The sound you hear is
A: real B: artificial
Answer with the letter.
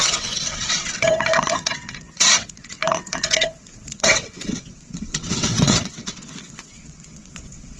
B